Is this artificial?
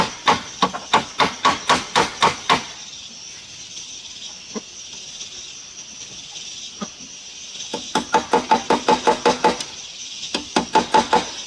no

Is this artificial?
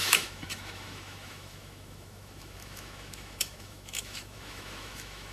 yes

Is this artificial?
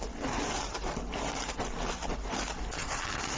no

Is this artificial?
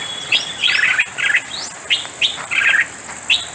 no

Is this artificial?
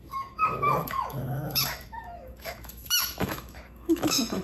yes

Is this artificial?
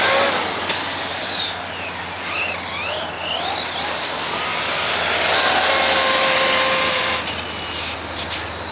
no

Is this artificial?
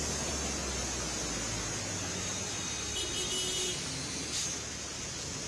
no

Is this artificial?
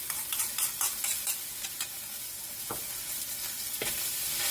no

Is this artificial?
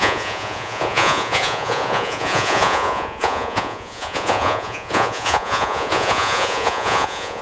yes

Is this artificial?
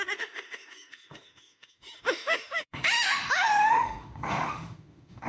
yes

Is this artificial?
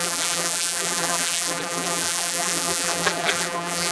yes